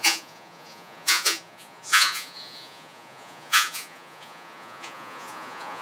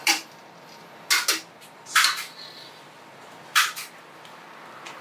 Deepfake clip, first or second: first